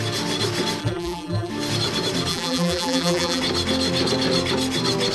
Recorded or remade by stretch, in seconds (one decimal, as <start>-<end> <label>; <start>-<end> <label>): 0.0-0.8 recorded; 0.8-1.5 remade; 1.5-2.3 recorded; 2.3-3.4 remade; 3.4-5.1 recorded